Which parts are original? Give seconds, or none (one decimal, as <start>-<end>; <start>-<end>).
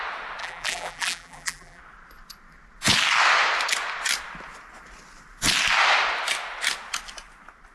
0.0-0.4; 1.8-7.7